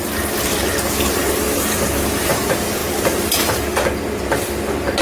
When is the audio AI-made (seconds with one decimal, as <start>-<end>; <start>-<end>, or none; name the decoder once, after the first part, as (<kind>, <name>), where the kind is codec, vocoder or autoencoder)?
none